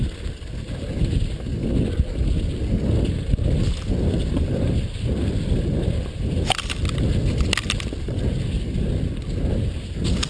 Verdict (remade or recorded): recorded